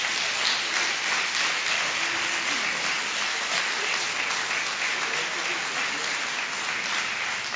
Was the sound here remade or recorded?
recorded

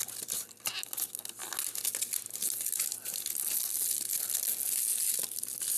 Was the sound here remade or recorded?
recorded